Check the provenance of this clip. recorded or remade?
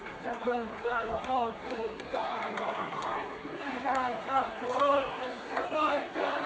remade